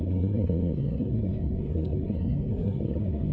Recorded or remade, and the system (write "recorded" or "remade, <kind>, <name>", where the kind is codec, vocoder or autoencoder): remade, codec, SNAC